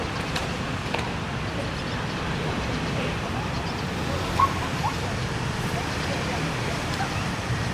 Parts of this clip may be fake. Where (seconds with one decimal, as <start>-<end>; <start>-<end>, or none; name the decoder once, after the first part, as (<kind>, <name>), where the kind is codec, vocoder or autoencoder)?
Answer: 0.0-7.7 (vocoder, BigVGAN v2)